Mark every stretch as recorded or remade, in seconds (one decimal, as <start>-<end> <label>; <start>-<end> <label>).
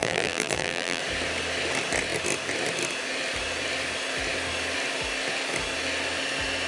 0.0-1.0 remade; 1.0-6.7 recorded